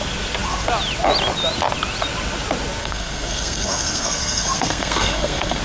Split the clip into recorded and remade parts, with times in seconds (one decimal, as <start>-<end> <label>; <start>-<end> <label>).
0.0-2.8 recorded; 2.8-5.6 remade